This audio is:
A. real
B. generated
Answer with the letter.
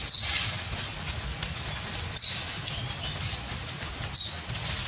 A